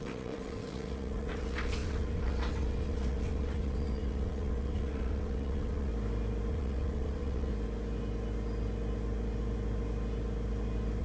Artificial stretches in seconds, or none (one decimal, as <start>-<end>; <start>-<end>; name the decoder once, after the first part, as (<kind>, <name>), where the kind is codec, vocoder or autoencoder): 0.0-5.9 (vocoder, WaveNeXt); 6.5-7.5